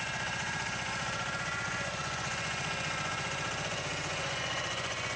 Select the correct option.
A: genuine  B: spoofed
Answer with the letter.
B